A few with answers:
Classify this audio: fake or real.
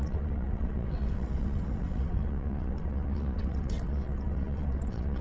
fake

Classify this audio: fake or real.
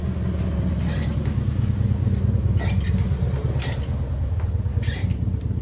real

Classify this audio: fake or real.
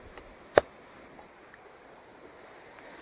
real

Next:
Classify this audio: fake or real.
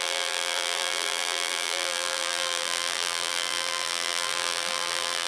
fake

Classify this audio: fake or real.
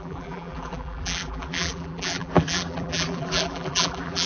fake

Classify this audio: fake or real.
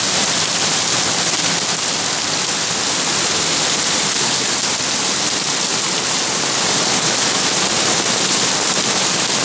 real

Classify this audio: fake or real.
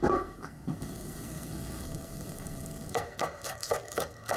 fake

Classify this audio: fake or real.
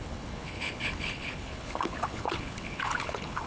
fake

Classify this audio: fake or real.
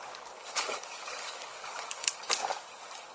fake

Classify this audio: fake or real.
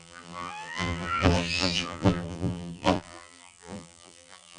fake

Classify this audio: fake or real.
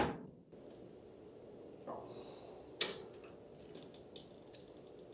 real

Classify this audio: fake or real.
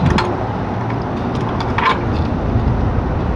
real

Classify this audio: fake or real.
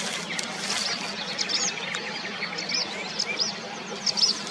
real